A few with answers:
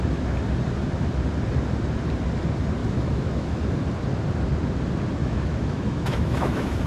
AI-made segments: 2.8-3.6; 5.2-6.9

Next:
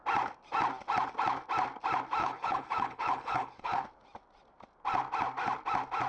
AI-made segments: 2.2-3.8

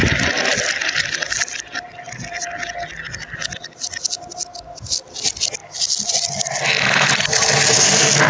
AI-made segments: none

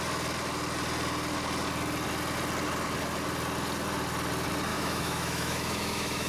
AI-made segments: 4.7-6.3

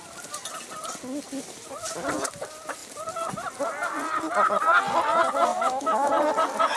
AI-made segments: 5.5-6.1